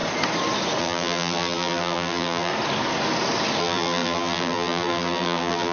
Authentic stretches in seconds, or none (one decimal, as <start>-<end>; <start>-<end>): 0.0-0.8; 2.5-3.6

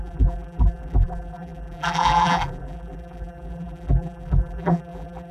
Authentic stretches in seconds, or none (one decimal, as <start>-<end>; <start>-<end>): none

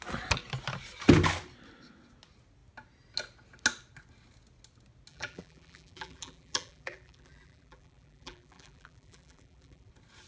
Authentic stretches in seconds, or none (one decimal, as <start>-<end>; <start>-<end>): 0.0-5.1; 9.9-10.3